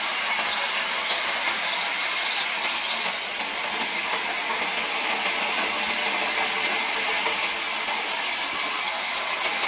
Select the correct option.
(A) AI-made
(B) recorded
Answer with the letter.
B